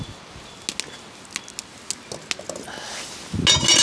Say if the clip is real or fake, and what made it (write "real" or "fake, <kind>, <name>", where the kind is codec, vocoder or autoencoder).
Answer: real